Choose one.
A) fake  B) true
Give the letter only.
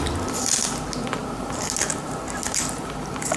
B